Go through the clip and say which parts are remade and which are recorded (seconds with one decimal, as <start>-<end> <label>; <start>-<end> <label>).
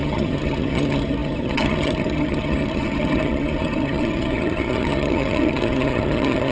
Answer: 0.0-6.5 remade